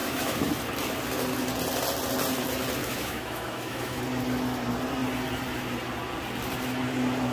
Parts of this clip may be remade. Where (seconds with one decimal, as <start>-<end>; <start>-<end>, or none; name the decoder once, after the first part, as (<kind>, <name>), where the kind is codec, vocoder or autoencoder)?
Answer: 0.0-0.5 (autoencoder, DAC-VAE); 2.8-4.0